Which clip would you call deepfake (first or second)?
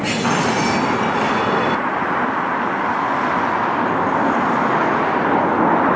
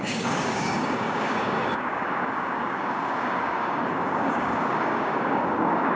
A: second